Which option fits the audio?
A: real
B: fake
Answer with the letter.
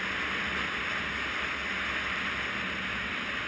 A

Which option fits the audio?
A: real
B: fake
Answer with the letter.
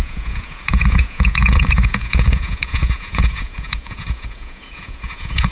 B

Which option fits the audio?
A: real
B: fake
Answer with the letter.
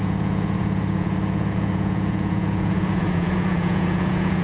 B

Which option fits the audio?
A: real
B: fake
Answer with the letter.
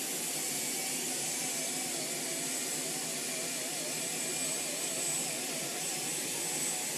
A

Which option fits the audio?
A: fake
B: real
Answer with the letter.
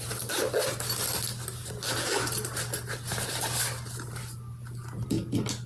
B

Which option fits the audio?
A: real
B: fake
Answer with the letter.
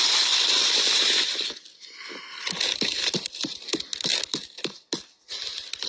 A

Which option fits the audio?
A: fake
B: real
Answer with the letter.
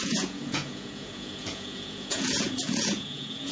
A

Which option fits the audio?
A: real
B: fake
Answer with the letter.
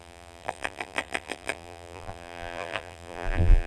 B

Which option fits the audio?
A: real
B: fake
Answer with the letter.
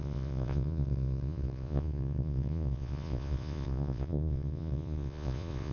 B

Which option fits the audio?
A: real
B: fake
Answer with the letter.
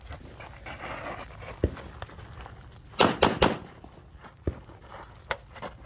A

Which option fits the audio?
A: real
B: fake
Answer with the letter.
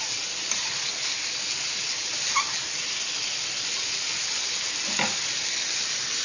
A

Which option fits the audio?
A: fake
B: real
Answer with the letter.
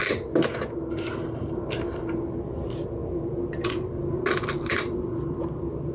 B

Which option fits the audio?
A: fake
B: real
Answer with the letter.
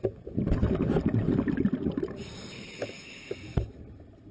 B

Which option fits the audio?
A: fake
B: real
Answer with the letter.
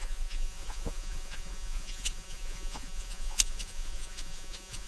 A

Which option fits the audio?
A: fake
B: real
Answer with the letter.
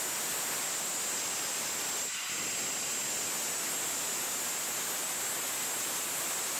B